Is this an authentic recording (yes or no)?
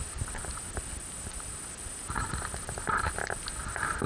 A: yes